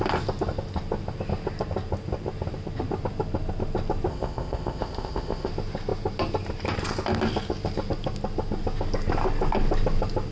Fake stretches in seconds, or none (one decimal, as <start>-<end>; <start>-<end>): 4.1-5.5